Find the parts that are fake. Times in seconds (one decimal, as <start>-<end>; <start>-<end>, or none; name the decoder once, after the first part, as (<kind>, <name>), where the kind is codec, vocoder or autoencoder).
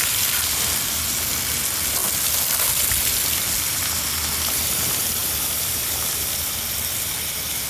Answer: 5.2-6.5 (vocoder, BigVGAN v2)